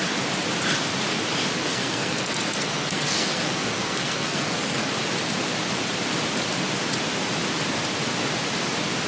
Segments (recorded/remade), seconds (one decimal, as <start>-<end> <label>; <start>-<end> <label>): 0.0-1.6 recorded; 1.6-4.9 remade; 4.9-9.1 recorded

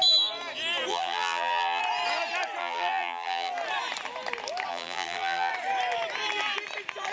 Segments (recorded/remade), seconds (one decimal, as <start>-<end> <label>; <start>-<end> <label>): 0.0-0.9 recorded; 0.9-1.8 remade; 1.8-2.6 recorded; 2.6-3.5 remade; 3.5-4.7 recorded; 4.7-5.5 remade; 5.5-7.1 recorded

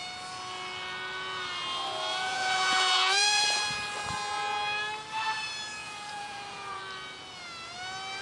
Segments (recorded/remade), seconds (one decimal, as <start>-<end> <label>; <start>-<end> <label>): 0.0-2.1 recorded; 2.1-3.6 remade; 3.6-5.8 recorded; 5.8-6.8 remade; 6.8-8.2 recorded

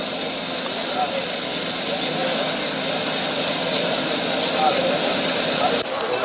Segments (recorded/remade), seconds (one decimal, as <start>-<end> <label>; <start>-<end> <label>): 0.0-6.2 recorded

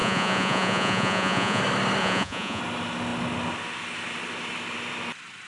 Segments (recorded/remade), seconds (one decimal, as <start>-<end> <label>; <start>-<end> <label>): 0.0-1.6 remade; 1.6-2.0 recorded; 2.0-2.6 remade; 2.6-5.5 recorded

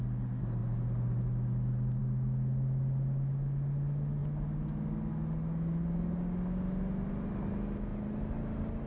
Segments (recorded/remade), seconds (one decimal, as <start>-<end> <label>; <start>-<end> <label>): 0.0-7.9 recorded; 7.9-8.4 remade; 8.4-8.9 recorded

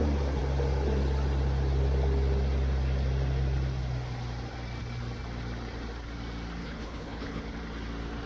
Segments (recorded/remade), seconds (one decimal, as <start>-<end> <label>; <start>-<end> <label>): 0.0-6.6 recorded; 6.6-7.4 remade; 7.4-8.3 recorded